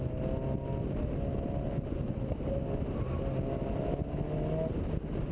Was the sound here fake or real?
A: real